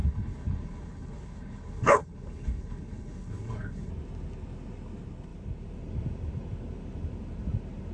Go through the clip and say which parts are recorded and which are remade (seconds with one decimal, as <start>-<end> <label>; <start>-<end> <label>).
0.0-3.9 remade; 3.9-7.9 recorded